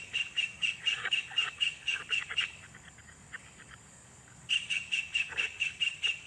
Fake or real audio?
fake